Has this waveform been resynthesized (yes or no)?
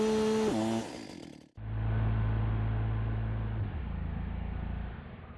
no